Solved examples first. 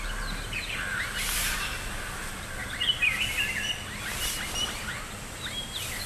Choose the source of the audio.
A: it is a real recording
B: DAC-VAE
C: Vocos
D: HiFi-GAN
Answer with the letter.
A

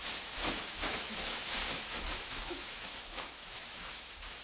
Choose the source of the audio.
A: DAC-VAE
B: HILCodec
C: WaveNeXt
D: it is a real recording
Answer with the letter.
A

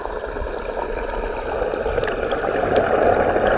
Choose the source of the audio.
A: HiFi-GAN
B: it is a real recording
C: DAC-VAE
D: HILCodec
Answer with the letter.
B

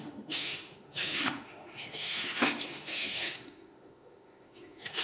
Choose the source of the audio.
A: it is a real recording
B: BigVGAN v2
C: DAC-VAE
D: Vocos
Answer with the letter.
C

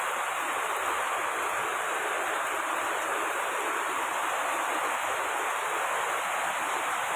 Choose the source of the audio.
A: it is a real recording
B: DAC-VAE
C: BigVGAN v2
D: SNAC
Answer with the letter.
A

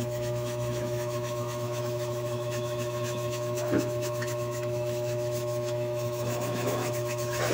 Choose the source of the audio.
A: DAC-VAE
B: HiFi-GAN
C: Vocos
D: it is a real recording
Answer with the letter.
A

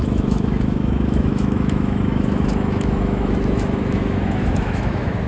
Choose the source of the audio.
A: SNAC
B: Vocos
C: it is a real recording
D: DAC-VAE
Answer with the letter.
D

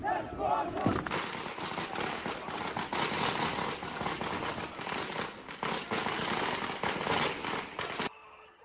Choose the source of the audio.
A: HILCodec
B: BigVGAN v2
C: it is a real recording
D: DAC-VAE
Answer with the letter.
C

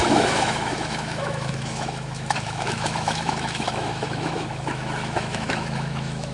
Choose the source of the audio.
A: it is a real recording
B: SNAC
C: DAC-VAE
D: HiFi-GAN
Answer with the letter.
C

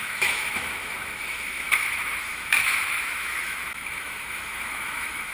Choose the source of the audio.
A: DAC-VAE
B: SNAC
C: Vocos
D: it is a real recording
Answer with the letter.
A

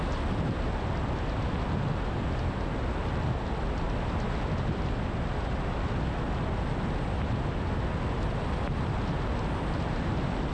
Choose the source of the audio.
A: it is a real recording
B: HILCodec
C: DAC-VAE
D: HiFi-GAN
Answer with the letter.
A